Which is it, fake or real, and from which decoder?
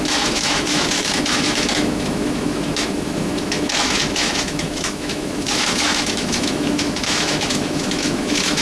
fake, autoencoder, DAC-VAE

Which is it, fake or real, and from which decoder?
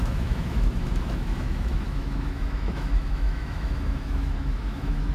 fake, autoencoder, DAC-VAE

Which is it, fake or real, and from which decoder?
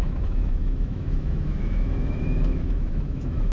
fake, autoencoder, DAC-VAE